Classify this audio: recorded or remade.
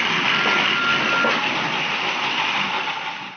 recorded